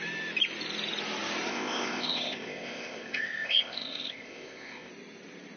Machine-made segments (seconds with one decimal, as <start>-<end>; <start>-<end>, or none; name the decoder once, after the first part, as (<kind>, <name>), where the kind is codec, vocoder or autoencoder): 1.5-4.9 (codec, ZipCodec)